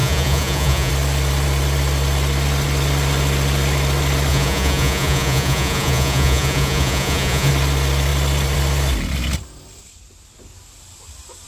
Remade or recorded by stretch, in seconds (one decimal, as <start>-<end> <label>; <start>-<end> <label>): 0.0-0.9 remade; 0.9-4.3 recorded; 4.3-7.5 remade; 7.5-11.5 recorded